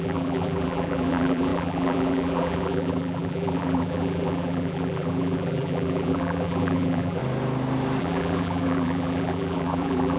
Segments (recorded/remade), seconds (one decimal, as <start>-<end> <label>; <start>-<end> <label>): 0.0-7.2 remade; 7.2-8.0 recorded; 8.0-10.2 remade